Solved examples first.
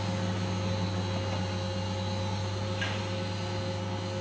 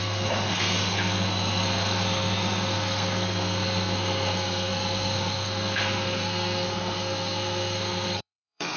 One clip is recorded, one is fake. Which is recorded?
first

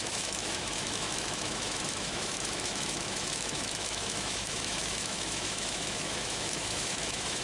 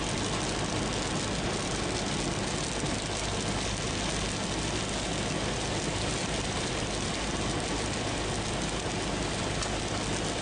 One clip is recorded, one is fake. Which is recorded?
second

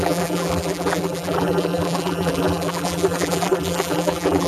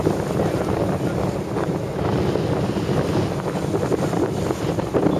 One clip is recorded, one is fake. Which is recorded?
second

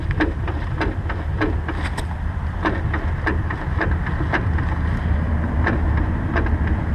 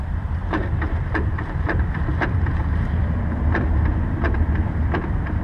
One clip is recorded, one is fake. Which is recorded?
first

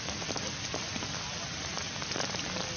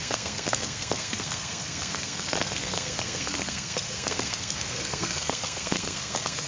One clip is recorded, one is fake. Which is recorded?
first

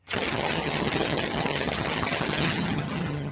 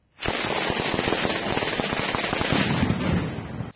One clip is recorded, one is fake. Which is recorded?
second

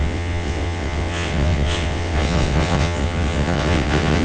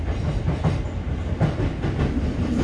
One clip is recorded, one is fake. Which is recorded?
second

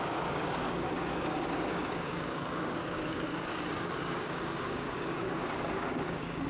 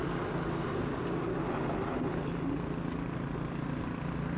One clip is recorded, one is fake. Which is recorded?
second